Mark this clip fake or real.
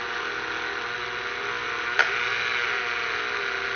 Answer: real